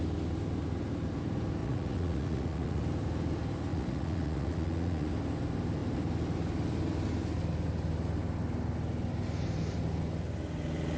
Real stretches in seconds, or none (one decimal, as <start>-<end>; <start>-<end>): 0.0-1.6; 2.8-3.7; 5.1-11.0